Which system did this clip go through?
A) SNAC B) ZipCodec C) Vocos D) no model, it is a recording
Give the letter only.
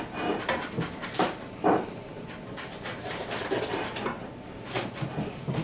D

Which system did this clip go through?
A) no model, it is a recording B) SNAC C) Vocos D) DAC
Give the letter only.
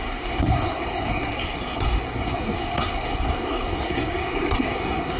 B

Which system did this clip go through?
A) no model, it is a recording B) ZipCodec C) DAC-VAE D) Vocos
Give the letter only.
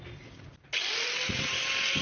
A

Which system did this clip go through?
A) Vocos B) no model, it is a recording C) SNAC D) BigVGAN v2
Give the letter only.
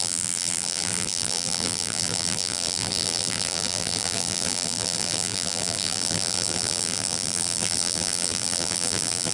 D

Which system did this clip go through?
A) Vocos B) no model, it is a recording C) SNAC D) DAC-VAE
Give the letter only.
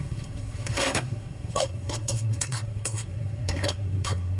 C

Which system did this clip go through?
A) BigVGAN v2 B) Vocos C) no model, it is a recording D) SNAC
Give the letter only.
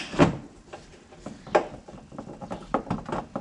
C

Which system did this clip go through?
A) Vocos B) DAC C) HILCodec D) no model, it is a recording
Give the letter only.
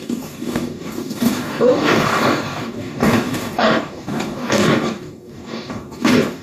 B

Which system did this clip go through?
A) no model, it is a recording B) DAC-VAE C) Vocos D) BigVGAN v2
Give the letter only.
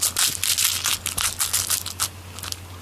A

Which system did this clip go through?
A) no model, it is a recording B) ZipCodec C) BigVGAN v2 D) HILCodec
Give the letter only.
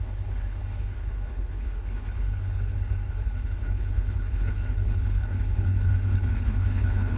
D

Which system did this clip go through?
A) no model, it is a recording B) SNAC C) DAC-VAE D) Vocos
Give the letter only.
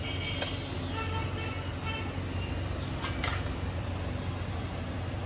A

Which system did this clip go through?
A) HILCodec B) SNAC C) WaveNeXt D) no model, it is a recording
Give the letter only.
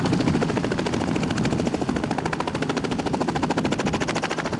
D